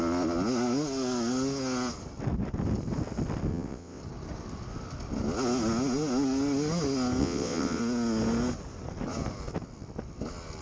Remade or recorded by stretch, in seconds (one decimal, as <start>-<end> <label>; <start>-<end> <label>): 0.0-3.5 recorded; 3.5-4.0 remade; 4.0-7.2 recorded; 7.2-7.8 remade; 7.8-10.6 recorded